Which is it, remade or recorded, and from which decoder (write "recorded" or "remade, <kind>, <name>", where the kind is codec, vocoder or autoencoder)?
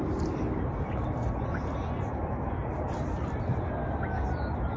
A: recorded